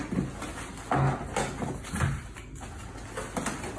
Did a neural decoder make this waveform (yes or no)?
no